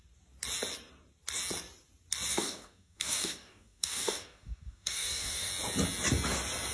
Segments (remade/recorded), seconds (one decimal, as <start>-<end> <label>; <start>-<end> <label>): 0.0-2.3 recorded; 2.3-5.5 remade; 5.5-6.7 recorded